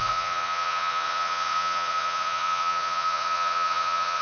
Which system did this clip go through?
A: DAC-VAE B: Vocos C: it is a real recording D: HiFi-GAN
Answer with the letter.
B